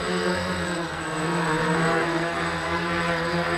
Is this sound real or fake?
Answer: fake